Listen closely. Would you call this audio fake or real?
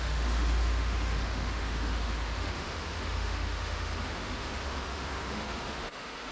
fake